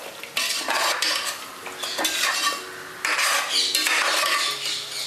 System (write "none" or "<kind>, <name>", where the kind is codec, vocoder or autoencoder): none